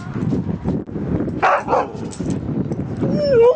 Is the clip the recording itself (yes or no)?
yes